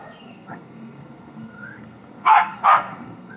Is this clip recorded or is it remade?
remade